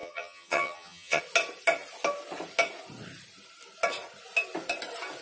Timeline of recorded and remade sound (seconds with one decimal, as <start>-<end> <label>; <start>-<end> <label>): 0.0-1.2 remade; 1.2-5.2 recorded